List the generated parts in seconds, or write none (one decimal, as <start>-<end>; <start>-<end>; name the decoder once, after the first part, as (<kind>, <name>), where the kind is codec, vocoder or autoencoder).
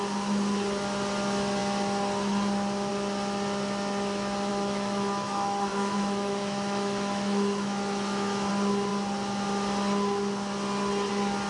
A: 4.5-8.5 (autoencoder, DAC-VAE)